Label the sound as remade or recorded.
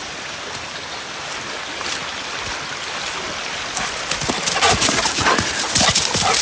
recorded